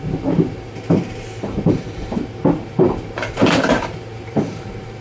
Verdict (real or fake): fake